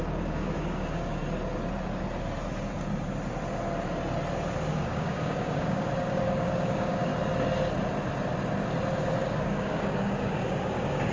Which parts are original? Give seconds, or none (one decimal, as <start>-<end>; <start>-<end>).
1.2-4.7; 7.1-9.2